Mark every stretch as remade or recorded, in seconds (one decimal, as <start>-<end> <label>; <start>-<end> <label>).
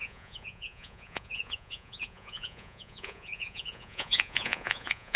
0.0-5.2 remade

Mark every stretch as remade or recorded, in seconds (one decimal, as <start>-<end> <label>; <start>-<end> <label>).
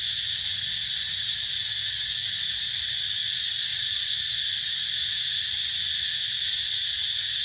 0.0-7.4 recorded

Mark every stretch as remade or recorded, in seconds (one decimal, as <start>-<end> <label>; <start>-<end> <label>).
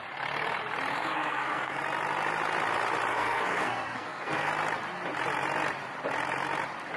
0.0-0.9 recorded; 0.9-1.8 remade; 1.8-3.1 recorded; 3.1-4.5 remade; 4.5-7.0 recorded